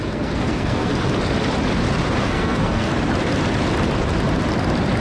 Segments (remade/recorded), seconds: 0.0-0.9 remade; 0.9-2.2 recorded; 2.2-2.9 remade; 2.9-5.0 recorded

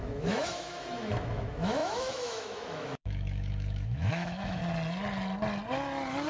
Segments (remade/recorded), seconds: 0.0-4.6 remade; 4.6-6.3 recorded

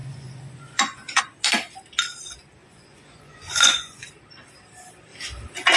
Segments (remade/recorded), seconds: 0.0-1.2 remade; 1.2-2.6 recorded; 2.6-4.1 remade; 4.1-5.8 recorded

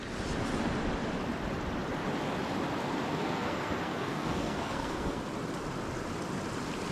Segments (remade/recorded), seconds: 0.0-3.1 recorded; 3.1-5.2 remade; 5.2-6.9 recorded

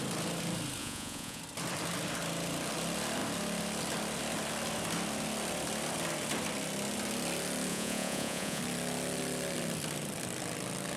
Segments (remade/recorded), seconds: 0.0-0.8 recorded; 0.8-1.4 remade; 1.4-7.7 recorded; 7.7-8.6 remade; 8.6-11.0 recorded

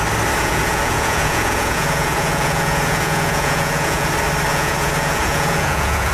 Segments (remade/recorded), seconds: 0.0-0.4 recorded; 0.4-4.1 remade; 4.1-4.5 recorded; 4.5-6.1 remade

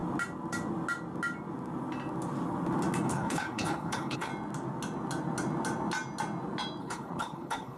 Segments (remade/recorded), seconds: 0.0-3.1 recorded; 3.1-4.3 remade; 4.3-6.8 recorded; 6.8-7.8 remade

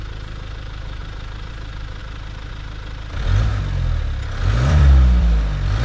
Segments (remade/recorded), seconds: 0.0-1.0 remade; 1.0-1.5 recorded; 1.5-3.5 remade; 3.5-4.4 recorded; 4.4-5.8 remade